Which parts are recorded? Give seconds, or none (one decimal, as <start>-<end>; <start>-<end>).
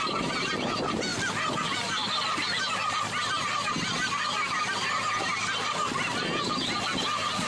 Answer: 0.0-7.5